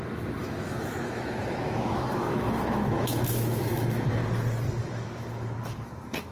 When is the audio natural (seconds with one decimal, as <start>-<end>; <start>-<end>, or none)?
4.2-4.8